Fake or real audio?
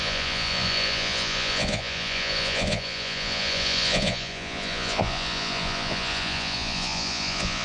fake